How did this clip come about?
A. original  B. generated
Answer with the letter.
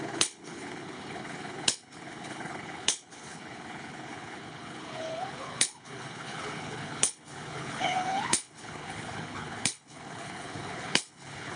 B